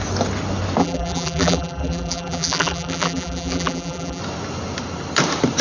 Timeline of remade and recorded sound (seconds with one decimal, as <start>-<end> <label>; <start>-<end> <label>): 0.0-0.8 recorded; 0.8-4.2 remade; 4.2-5.6 recorded